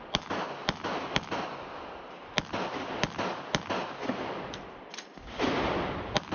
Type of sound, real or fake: real